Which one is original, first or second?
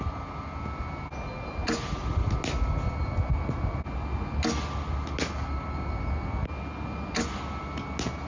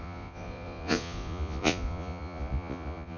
first